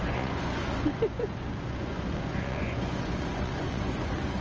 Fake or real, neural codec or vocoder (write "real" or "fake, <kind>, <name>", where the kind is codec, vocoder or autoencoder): fake, vocoder, Vocos